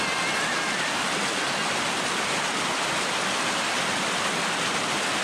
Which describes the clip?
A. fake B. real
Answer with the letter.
B